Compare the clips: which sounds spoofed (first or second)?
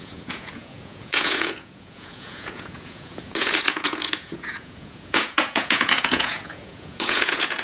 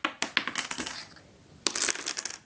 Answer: first